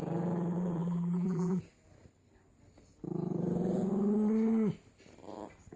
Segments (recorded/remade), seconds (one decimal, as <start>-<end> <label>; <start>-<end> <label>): 0.0-0.8 recorded; 0.8-1.6 remade; 1.6-5.8 recorded